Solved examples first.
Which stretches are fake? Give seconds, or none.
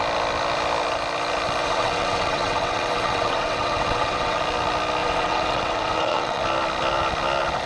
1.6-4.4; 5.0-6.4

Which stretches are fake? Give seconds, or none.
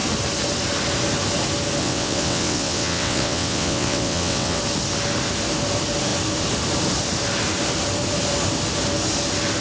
1.8-4.6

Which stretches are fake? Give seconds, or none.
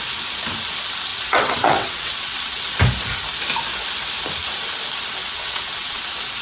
1.1-2.8; 5.2-6.0